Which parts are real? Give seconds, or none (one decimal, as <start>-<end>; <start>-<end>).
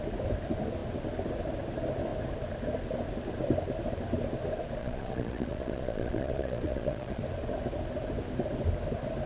0.0-4.8; 7.2-9.3